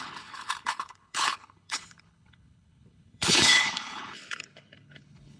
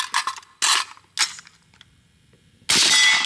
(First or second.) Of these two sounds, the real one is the second